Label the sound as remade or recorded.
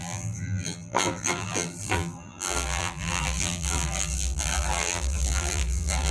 remade